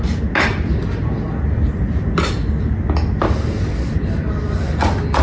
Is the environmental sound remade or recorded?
recorded